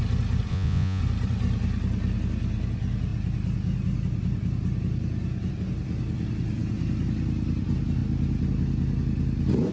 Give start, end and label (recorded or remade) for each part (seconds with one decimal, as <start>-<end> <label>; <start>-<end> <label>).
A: 0.0-0.5 recorded; 0.5-1.0 remade; 1.0-9.7 recorded